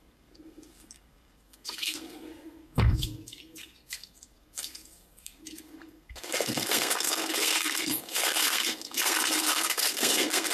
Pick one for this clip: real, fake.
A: fake